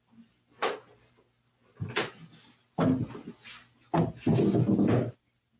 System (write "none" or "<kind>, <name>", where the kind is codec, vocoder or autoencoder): none